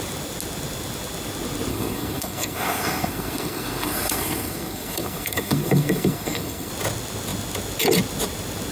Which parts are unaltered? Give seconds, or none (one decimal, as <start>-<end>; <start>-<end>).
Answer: 0.0-1.7; 6.7-8.7